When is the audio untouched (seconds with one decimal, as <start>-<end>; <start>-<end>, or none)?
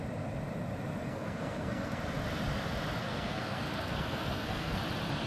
0.0-1.0; 2.0-3.0; 4.8-5.3